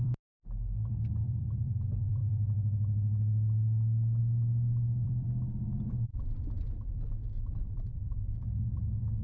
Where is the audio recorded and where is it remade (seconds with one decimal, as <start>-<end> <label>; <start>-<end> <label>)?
0.0-2.2 remade; 2.2-4.2 recorded; 4.2-6.1 remade; 6.1-6.6 recorded; 6.6-9.2 remade